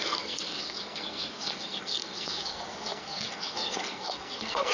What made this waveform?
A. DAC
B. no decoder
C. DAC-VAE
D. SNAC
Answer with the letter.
D